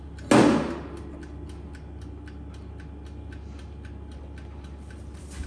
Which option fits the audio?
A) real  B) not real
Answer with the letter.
A